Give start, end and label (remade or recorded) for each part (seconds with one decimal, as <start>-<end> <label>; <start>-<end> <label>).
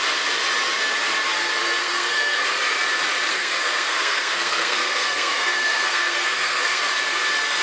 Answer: 0.0-1.8 recorded; 1.8-2.4 remade; 2.4-3.3 recorded; 3.3-6.8 remade; 6.8-7.6 recorded